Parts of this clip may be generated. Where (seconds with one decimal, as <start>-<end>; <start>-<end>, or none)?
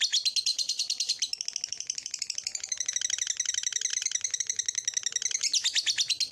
0.5-1.1; 1.7-2.9